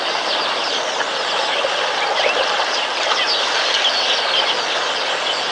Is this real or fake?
real